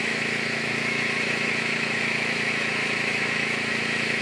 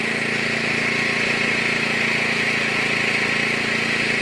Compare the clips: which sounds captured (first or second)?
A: second